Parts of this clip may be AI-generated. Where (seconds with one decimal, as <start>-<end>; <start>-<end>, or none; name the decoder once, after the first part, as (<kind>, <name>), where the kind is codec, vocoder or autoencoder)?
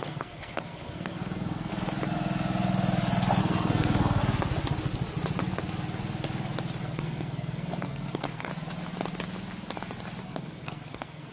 0.0-1.7 (codec, SNAC); 3.4-4.2; 6.8-8.5; 10.2-11.3